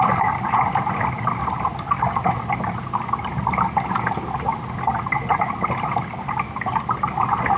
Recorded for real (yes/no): yes